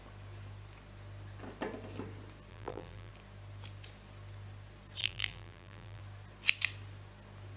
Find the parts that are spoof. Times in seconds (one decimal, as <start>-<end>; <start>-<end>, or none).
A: 2.5-3.1; 5.0-6.0